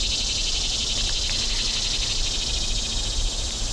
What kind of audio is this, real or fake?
real